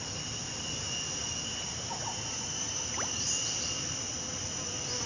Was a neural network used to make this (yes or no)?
no